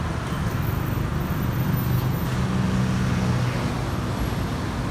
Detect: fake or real real